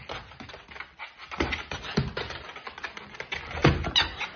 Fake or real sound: real